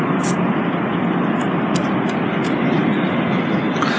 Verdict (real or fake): real